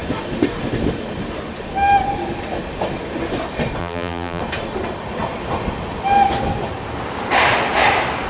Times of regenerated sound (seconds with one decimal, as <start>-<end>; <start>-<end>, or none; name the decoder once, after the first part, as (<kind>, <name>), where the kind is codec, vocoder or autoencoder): 3.8-4.4 (vocoder, BigVGAN v2)